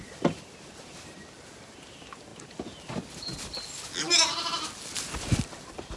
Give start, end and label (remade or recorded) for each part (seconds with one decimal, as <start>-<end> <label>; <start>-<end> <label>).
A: 0.0-2.3 remade; 2.3-5.1 recorded; 5.1-6.0 remade